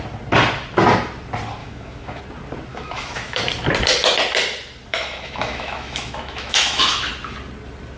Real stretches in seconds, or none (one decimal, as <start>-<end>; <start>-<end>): 0.0-1.6; 2.2-2.7; 3.4-4.9; 7.1-8.0